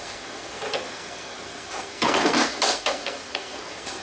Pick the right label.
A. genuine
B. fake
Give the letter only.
B